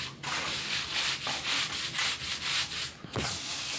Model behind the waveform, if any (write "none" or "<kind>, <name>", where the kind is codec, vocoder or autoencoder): none